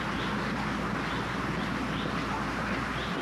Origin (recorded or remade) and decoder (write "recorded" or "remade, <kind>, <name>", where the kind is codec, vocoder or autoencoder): recorded